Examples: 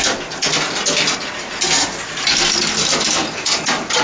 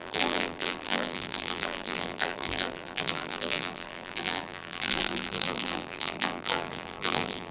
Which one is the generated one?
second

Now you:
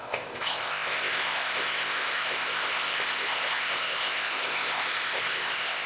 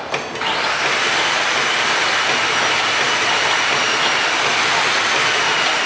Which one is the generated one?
first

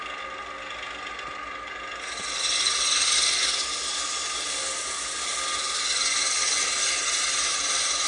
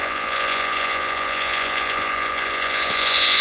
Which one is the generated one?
second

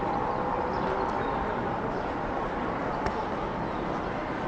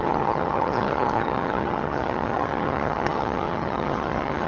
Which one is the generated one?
second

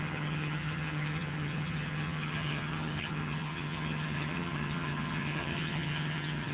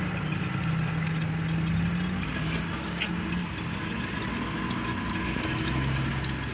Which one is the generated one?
first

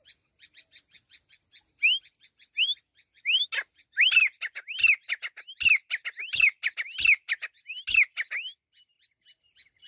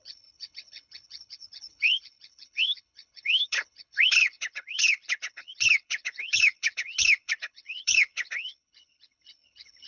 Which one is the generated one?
second